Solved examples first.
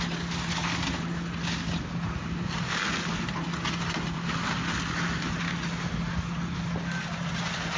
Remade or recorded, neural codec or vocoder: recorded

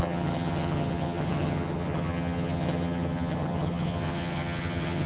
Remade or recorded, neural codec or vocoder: remade, vocoder, HiFi-GAN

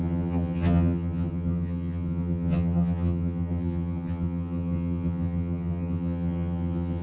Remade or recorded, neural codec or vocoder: remade, vocoder, HiFi-GAN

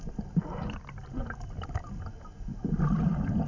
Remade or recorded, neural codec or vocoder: recorded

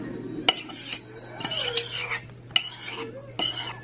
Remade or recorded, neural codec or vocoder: recorded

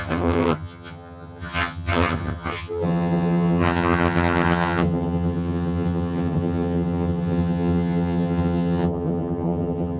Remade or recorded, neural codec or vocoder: remade, vocoder, HiFi-GAN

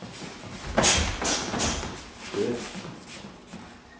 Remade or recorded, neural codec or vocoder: recorded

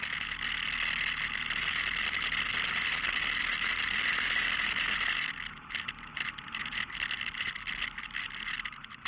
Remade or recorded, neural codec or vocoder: recorded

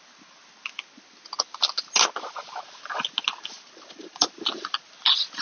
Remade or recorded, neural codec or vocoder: recorded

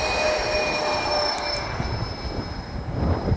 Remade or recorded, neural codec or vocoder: recorded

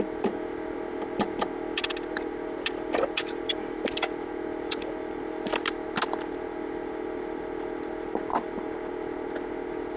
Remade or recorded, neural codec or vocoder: recorded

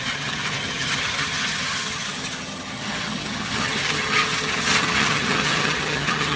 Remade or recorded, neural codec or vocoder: remade, vocoder, HiFi-GAN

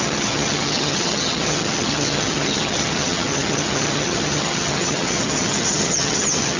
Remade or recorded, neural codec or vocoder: remade, vocoder, HiFi-GAN